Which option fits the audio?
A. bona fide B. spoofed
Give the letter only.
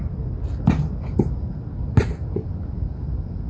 A